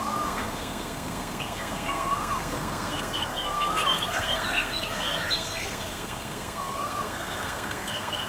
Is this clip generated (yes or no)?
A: yes